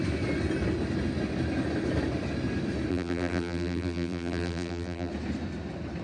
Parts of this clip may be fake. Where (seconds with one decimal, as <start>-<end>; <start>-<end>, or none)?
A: 2.9-5.1